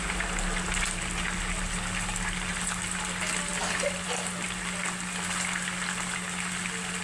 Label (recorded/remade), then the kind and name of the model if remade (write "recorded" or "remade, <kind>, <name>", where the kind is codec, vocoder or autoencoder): recorded